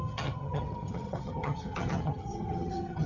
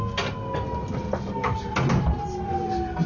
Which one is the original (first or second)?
second